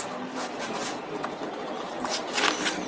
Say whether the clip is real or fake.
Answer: real